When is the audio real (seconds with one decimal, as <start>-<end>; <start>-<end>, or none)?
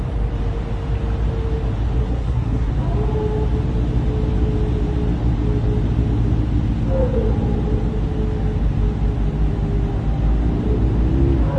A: 0.0-2.0; 2.7-11.6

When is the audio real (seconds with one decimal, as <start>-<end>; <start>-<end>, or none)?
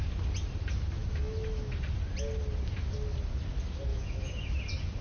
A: 0.0-1.0; 1.7-3.9; 4.6-5.0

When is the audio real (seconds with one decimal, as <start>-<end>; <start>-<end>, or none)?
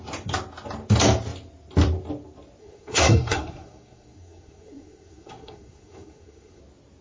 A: 0.0-2.6; 6.6-7.0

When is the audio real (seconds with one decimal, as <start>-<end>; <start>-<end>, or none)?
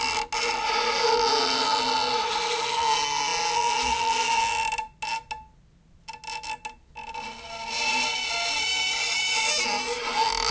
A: 0.0-10.5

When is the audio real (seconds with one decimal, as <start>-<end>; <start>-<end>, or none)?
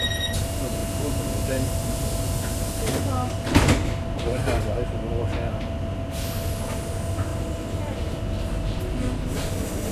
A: 0.0-4.4; 5.1-9.9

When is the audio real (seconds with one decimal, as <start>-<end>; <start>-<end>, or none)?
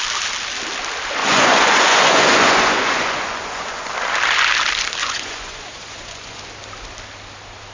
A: 0.0-1.2; 3.9-5.0; 6.4-7.7